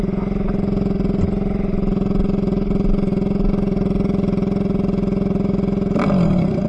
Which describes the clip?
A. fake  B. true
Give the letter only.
B